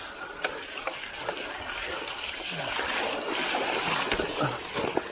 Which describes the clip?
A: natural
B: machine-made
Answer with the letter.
A